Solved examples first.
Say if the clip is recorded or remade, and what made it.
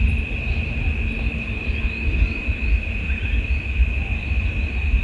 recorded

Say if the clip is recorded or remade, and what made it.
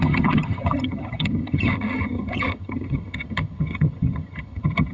remade, vocoder, HiFi-GAN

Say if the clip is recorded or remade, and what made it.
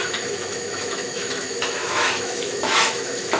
remade, autoencoder, DAC-VAE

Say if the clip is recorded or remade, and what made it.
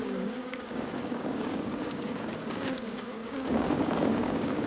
remade, codec, DAC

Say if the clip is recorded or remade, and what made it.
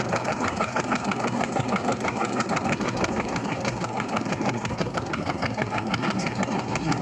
remade, codec, SNAC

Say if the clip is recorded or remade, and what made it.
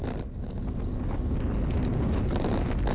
recorded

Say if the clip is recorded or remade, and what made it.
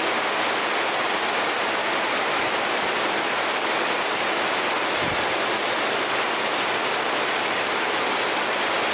recorded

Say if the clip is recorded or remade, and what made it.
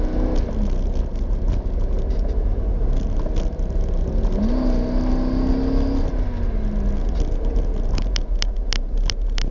recorded